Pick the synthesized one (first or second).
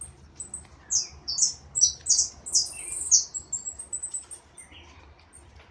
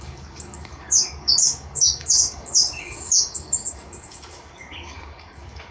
second